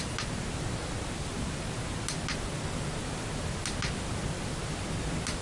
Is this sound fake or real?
real